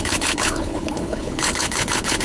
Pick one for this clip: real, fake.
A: fake